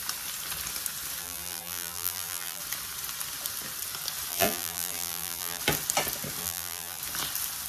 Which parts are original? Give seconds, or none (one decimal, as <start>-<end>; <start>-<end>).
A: 0.0-1.2; 2.6-4.3; 5.6-6.4; 7.0-7.7